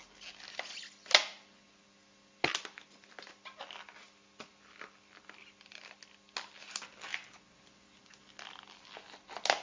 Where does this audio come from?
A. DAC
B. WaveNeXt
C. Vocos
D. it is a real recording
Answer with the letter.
D